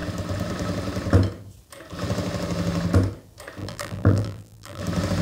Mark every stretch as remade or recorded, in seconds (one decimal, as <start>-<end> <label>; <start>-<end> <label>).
0.0-3.6 recorded; 3.6-4.8 remade; 4.8-5.2 recorded